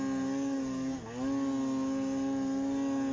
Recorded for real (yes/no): yes